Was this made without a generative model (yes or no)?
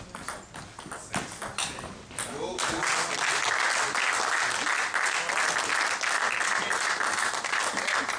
yes